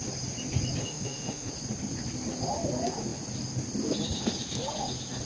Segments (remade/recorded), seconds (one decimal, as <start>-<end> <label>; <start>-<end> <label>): 0.0-0.8 recorded; 0.8-1.5 remade; 1.5-5.3 recorded